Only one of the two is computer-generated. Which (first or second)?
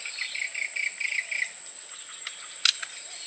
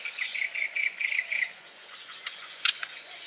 second